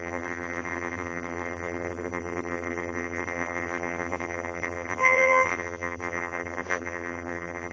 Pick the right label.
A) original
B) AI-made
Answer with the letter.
B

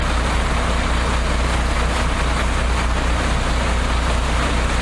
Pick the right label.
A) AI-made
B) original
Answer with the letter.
B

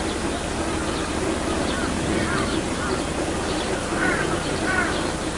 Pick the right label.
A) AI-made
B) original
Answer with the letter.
B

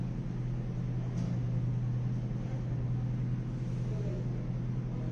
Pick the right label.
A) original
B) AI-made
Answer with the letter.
A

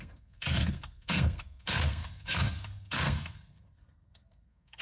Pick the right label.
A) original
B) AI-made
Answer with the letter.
B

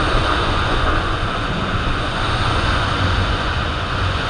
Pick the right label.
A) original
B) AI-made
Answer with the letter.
B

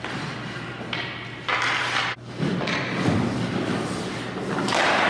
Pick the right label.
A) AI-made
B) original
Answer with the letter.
B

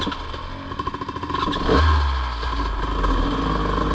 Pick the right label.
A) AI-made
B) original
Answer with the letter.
B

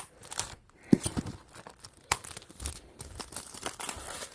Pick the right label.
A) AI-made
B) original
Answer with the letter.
B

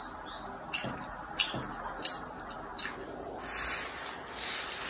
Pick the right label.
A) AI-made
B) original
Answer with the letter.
B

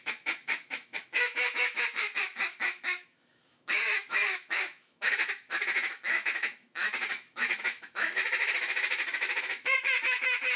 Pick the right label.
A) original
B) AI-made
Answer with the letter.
B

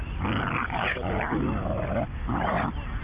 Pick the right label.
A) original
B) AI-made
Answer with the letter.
A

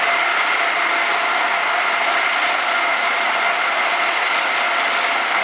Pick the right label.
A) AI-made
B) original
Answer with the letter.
B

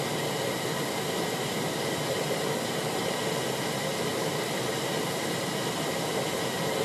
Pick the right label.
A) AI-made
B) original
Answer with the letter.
B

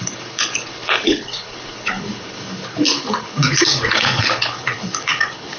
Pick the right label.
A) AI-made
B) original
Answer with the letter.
A